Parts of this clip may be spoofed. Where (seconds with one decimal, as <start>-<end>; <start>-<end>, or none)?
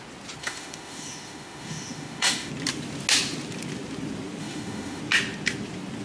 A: 0.4-2.5; 4.4-5.0